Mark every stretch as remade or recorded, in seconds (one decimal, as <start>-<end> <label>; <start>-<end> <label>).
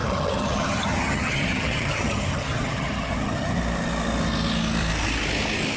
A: 0.0-3.5 remade; 3.5-5.8 recorded